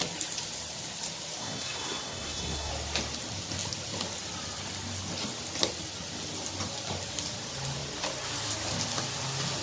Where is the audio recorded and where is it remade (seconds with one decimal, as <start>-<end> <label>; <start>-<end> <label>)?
0.0-1.4 recorded; 1.4-2.7 remade; 2.7-9.6 recorded